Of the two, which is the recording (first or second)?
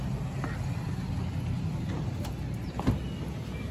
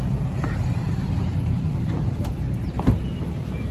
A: first